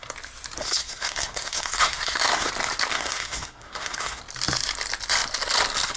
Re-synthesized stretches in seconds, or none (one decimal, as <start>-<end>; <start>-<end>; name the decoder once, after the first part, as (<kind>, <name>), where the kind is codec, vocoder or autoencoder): 0.6-2.5 (codec, SNAC); 2.9-4.2